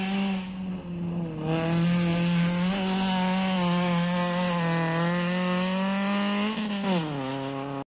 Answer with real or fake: real